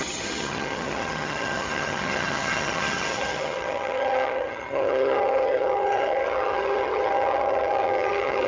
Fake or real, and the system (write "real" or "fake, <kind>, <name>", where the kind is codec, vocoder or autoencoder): fake, vocoder, HiFi-GAN